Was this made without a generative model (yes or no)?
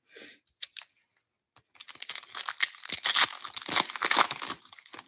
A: yes